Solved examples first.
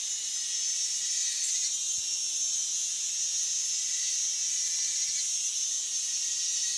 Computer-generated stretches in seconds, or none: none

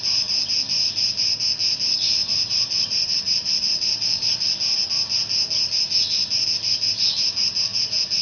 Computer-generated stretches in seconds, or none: 2.2-4.5 (vocoder, BigVGAN v2)

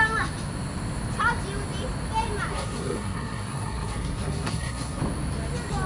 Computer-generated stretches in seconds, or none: 2.5-5.0 (codec, SNAC)